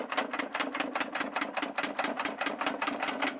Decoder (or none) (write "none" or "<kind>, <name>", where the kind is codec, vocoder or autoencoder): none